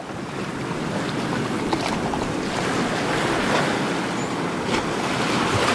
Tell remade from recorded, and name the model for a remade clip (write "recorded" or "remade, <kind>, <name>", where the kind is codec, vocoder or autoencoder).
recorded